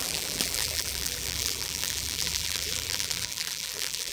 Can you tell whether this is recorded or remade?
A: remade